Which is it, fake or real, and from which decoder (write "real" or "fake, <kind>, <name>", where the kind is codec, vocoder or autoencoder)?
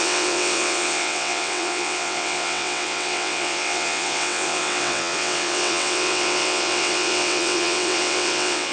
fake, vocoder, WaveNeXt